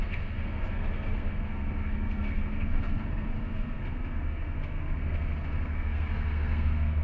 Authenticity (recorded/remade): remade